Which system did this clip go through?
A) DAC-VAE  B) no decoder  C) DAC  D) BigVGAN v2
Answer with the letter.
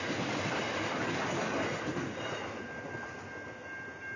B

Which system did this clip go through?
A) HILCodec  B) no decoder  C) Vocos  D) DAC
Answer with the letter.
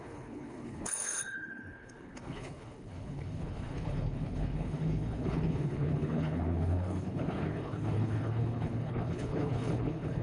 A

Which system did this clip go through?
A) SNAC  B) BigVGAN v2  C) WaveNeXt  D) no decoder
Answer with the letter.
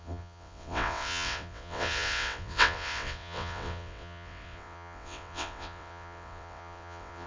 C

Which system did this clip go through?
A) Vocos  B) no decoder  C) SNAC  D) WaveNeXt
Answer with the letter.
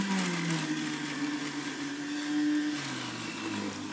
B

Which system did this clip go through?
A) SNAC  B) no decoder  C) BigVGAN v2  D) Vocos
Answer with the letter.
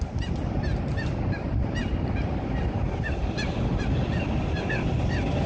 B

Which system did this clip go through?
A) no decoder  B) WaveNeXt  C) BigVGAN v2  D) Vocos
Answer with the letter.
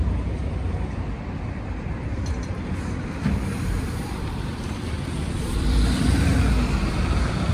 C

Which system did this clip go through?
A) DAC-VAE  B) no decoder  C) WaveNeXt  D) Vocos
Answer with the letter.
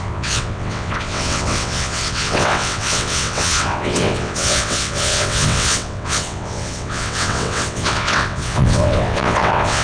C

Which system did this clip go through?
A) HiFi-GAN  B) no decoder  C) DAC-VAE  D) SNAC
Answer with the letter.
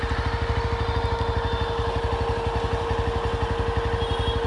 B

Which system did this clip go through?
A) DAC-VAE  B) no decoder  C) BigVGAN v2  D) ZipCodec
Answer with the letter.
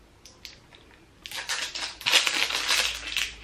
B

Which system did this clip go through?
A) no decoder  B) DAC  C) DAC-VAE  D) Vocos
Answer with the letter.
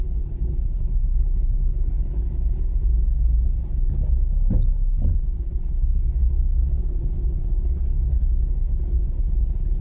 A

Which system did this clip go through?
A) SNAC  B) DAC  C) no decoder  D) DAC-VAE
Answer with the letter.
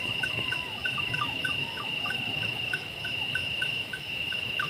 D